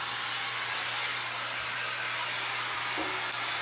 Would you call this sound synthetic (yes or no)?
no